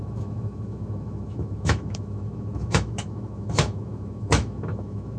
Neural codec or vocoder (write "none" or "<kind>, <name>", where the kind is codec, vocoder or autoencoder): autoencoder, DAC-VAE